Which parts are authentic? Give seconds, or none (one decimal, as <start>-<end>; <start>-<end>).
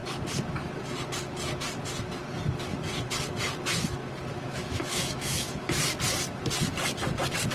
0.0-4.3; 5.8-7.5